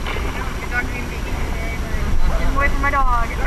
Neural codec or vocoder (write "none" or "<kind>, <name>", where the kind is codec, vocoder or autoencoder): none